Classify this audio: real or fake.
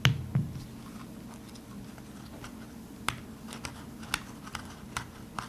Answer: real